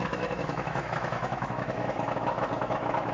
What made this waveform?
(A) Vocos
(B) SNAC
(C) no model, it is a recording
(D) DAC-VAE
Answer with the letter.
D